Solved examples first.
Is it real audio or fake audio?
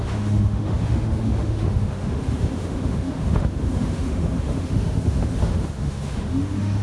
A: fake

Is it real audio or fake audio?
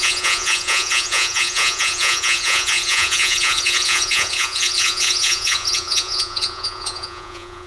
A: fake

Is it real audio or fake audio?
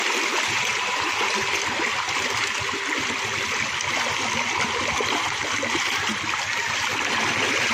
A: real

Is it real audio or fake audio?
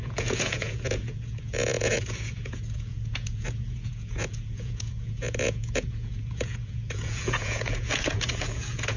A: fake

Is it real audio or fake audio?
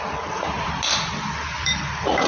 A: fake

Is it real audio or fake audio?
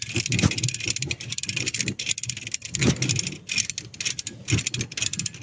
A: real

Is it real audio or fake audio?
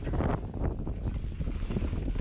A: real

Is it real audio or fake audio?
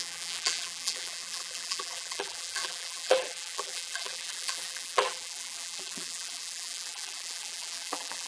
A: fake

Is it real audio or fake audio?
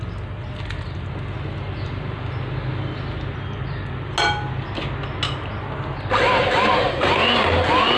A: real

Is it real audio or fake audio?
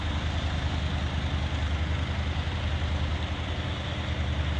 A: real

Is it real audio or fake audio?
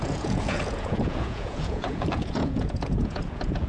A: fake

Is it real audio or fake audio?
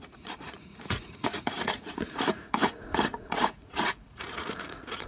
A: fake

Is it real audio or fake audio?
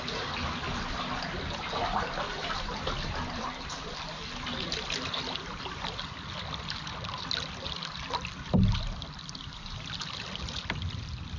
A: real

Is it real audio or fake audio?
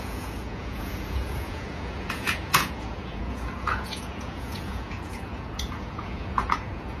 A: fake